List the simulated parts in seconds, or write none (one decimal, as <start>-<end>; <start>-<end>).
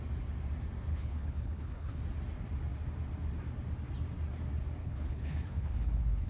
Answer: 0.9-2.0; 4.8-6.3